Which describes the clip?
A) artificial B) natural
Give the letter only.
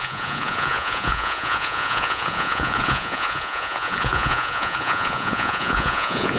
A